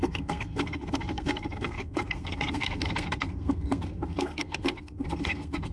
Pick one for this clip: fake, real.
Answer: fake